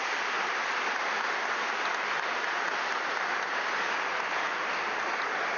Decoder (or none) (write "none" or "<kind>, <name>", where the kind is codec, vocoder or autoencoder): none